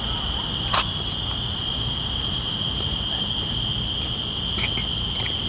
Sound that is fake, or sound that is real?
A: real